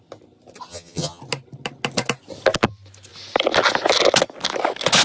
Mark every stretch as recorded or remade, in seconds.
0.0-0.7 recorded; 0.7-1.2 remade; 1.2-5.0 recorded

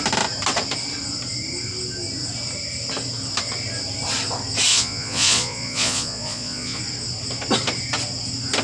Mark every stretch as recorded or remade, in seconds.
0.0-4.7 recorded; 4.7-6.8 remade; 6.8-8.6 recorded

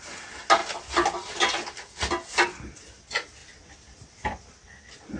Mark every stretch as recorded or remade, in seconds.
0.0-5.2 recorded

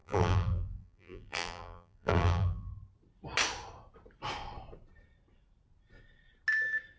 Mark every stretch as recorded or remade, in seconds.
0.0-2.7 remade; 2.7-7.0 recorded